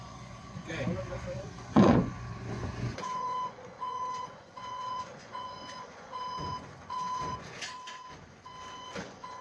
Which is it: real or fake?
fake